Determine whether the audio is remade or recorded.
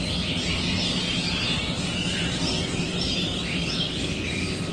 recorded